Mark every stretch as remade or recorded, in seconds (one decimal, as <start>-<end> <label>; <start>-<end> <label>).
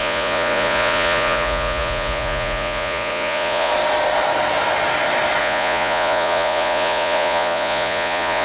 0.0-3.7 remade; 3.7-5.4 recorded; 5.4-8.4 remade